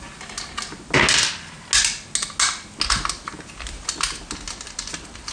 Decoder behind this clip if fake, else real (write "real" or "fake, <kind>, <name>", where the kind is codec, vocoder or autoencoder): real